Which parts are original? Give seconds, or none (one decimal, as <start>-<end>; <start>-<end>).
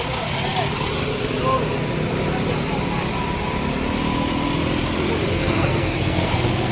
0.0-5.4